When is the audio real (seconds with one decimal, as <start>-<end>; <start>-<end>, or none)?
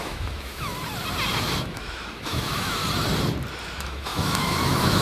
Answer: 0.7-1.6; 2.8-3.6